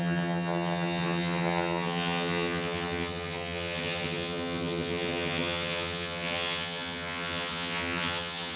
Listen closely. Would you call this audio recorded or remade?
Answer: remade